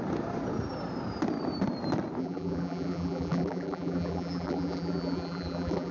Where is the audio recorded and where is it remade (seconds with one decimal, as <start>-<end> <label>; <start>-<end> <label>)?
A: 0.0-2.2 recorded; 2.2-5.9 remade